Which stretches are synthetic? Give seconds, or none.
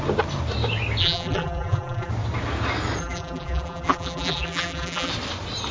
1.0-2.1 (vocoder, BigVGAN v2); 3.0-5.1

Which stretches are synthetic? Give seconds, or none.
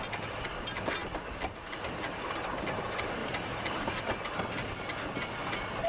3.2-4.1 (vocoder, BigVGAN v2)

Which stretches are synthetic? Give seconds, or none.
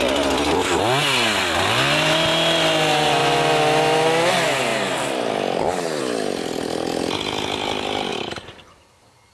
4.7-6.0 (vocoder, BigVGAN v2); 8.1-9.3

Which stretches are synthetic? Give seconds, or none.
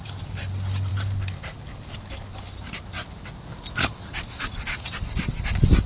none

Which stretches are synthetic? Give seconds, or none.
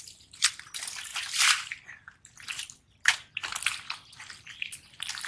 0.0-1.1 (vocoder, BigVGAN v2); 4.3-5.3